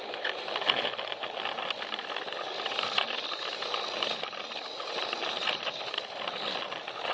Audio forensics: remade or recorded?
recorded